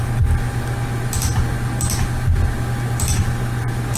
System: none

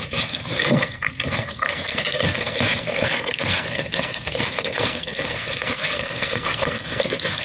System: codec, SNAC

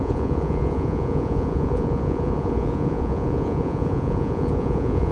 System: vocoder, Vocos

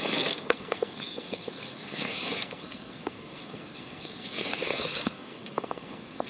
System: codec, SNAC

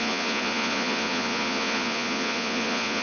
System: vocoder, Vocos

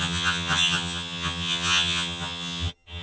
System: vocoder, HiFi-GAN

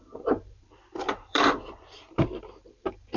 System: vocoder, BigVGAN v2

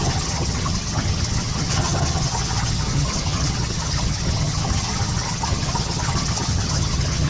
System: vocoder, HiFi-GAN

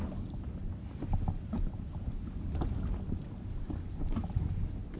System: none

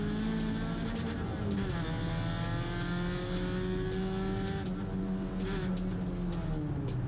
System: none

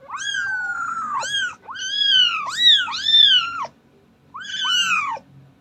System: none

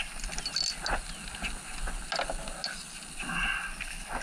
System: none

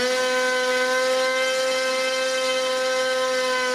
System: none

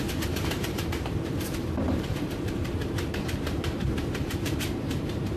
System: vocoder, BigVGAN v2